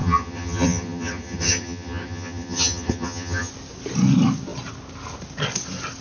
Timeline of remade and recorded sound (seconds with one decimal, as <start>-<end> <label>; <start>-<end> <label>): 0.0-3.5 remade; 3.5-6.0 recorded